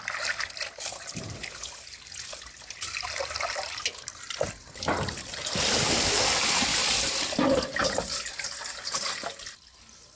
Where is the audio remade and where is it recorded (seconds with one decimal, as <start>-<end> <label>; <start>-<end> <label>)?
0.0-10.2 recorded